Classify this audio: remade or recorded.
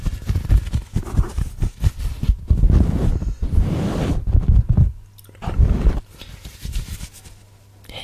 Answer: recorded